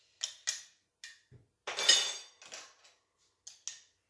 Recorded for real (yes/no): yes